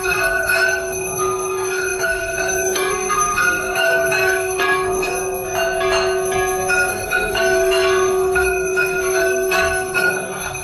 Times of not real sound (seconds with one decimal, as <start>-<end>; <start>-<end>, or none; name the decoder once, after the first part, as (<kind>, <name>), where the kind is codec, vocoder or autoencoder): 0.0-5.1 (codec, SNAC); 6.9-10.6